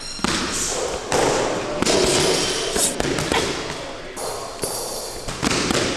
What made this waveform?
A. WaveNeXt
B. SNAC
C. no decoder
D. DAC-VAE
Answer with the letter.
C